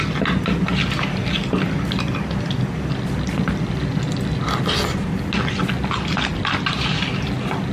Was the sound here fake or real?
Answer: real